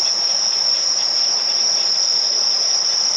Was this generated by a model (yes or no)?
no